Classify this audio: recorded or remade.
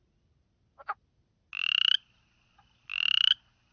recorded